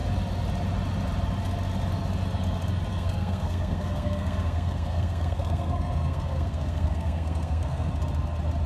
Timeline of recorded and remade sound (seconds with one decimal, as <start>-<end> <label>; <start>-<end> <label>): 0.0-2.9 recorded; 2.9-7.9 remade; 7.9-8.7 recorded